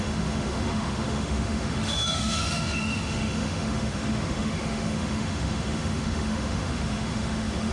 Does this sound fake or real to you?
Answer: fake